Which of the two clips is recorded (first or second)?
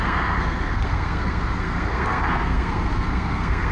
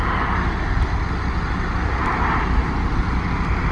second